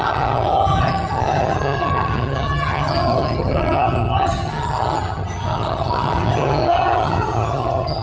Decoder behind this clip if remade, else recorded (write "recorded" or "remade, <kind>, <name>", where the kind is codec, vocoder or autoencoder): remade, vocoder, HiFi-GAN